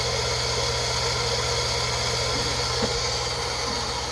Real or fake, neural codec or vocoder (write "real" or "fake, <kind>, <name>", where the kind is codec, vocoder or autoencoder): real